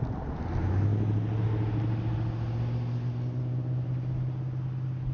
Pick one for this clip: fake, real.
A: real